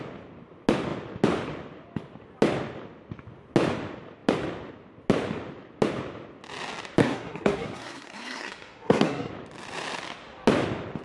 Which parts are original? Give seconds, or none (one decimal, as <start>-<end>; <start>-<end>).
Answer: 0.0-7.0; 9.3-11.0